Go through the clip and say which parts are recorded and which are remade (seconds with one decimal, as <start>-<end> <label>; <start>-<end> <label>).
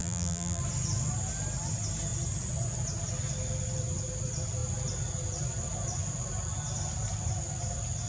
0.0-0.6 remade; 0.6-8.1 recorded